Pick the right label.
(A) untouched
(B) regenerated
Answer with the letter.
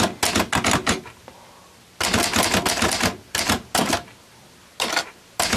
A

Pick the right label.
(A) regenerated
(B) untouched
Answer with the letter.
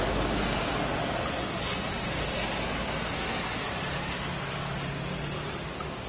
B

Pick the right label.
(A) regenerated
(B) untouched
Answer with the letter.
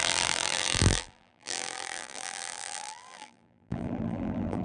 A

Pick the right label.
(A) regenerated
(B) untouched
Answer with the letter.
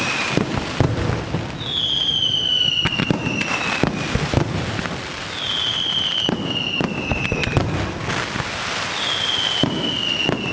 A